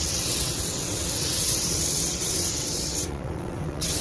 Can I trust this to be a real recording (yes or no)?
no